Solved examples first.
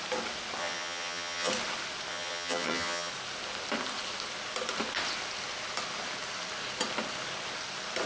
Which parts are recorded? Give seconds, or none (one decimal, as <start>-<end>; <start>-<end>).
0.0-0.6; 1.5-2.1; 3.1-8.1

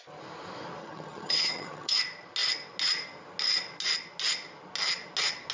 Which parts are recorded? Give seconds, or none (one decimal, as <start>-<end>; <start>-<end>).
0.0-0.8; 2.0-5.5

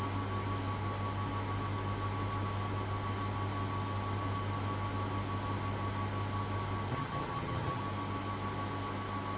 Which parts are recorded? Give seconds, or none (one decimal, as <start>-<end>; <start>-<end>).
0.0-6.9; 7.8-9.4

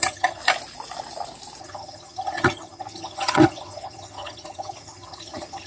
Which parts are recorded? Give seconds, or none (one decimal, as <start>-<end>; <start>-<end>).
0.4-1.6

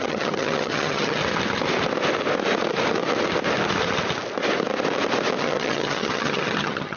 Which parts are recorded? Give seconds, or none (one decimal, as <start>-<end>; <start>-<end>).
1.2-5.4